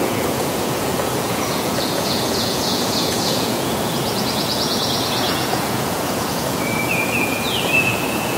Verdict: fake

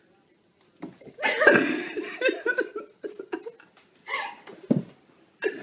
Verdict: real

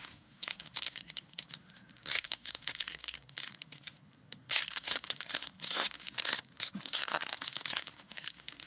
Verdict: fake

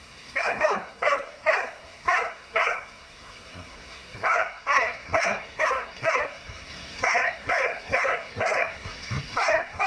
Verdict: fake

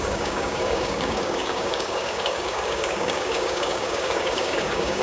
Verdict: fake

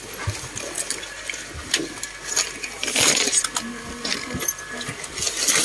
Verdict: real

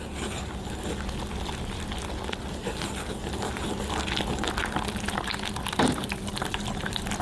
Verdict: real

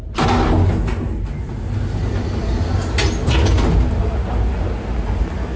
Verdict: real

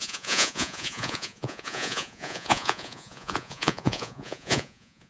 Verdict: fake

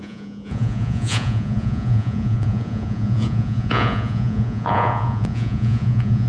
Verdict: fake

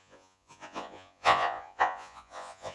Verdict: fake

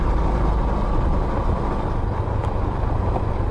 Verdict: real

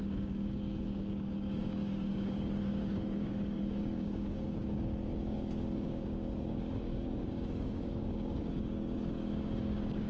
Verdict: fake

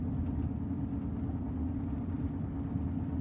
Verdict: real